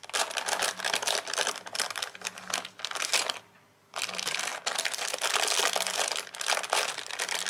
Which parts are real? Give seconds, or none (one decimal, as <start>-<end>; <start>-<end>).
0.0-7.5